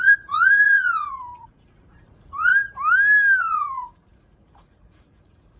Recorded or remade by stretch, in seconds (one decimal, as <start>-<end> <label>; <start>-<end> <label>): 0.0-2.5 remade; 2.5-3.4 recorded; 3.4-5.6 remade